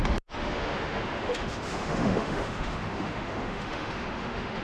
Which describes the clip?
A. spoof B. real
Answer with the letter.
A